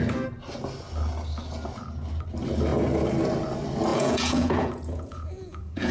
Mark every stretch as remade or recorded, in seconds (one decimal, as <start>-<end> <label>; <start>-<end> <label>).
0.0-3.9 recorded; 3.9-5.9 remade